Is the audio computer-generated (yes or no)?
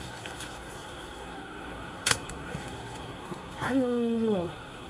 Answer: yes